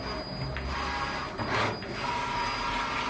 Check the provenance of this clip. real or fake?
real